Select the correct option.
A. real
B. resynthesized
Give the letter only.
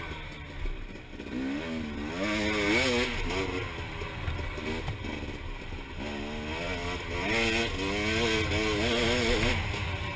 A